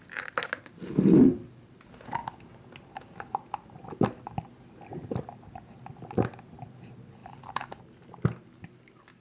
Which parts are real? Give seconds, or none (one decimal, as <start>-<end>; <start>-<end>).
0.0-7.2; 7.8-9.2